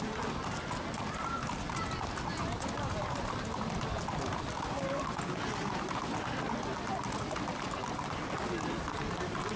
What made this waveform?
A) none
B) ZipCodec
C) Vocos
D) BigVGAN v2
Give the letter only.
A